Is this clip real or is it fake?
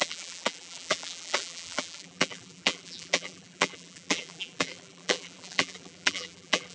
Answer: fake